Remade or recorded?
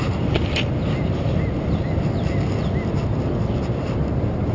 recorded